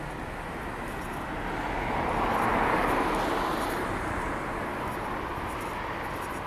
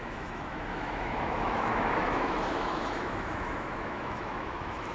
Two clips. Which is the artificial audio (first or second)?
second